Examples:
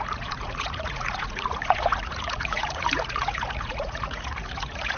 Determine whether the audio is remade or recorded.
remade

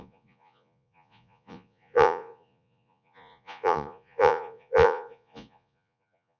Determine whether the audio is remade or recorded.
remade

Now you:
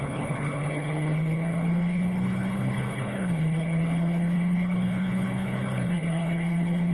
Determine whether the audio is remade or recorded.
remade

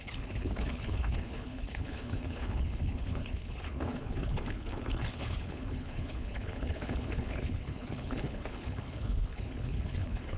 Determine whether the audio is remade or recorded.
remade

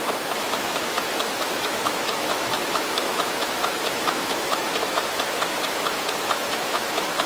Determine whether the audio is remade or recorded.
remade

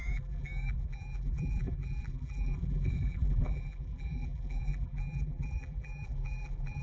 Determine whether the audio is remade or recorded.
remade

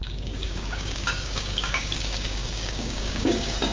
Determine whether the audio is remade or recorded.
remade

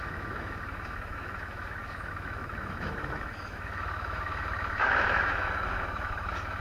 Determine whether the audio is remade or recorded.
remade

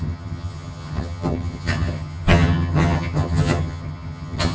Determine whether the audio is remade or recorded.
remade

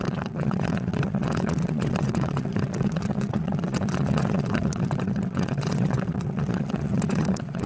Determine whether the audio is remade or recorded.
remade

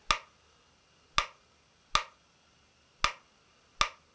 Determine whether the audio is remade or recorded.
recorded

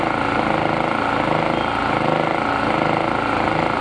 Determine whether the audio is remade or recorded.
recorded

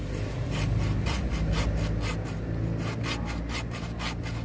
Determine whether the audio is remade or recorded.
recorded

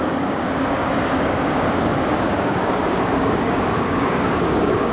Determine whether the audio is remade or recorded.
remade